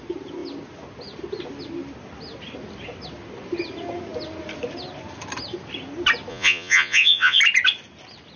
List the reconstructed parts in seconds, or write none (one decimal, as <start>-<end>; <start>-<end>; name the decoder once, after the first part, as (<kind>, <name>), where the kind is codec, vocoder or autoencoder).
6.3-7.4 (vocoder, Vocos)